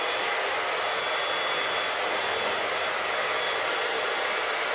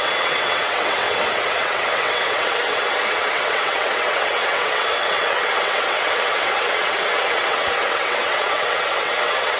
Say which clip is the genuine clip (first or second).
first